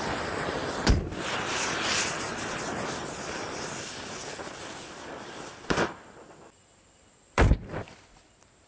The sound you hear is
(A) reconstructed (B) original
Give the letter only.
A